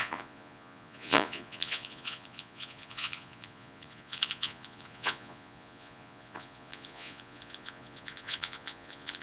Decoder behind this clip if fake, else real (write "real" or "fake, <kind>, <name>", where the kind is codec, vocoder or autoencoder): fake, vocoder, Vocos